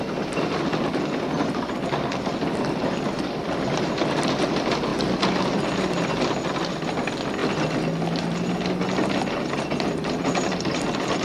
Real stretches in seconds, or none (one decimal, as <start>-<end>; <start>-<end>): 0.0-11.2